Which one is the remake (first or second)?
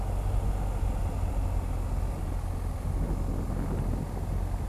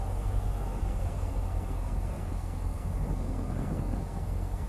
second